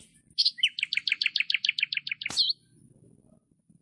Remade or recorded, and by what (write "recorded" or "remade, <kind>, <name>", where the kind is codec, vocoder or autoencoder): recorded